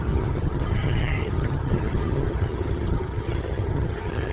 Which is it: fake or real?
fake